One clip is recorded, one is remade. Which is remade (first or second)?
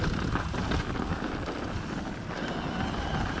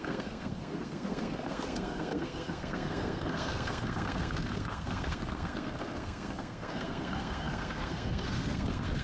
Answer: second